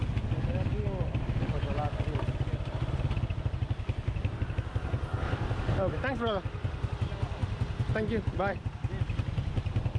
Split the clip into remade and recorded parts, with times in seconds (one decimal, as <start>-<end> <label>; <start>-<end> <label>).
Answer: 0.0-10.0 recorded